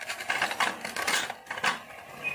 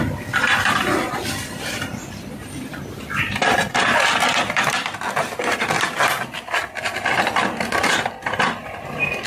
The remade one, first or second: second